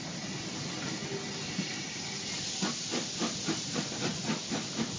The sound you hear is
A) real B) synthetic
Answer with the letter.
A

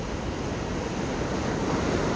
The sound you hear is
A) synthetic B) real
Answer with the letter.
B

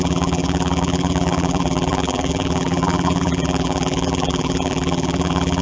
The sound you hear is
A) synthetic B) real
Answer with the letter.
A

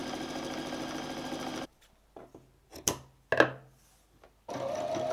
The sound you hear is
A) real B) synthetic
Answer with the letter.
A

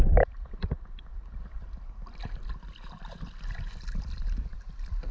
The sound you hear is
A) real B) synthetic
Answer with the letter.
B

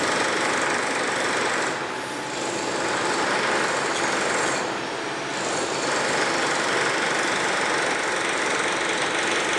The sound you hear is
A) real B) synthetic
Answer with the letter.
A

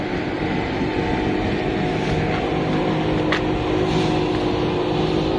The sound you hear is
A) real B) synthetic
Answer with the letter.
A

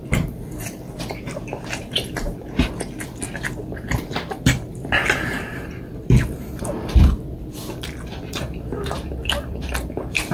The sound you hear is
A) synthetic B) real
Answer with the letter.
A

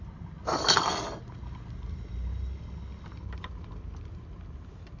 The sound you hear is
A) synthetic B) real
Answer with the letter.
B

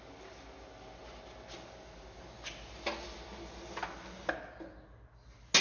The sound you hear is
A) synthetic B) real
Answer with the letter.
B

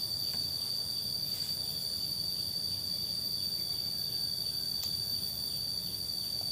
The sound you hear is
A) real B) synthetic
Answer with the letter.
A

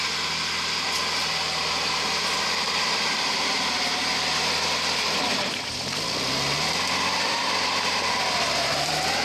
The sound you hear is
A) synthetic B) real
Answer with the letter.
A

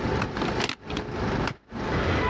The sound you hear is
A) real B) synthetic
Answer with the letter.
A